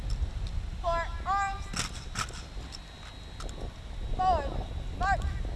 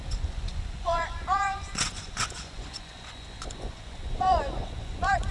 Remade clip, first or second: second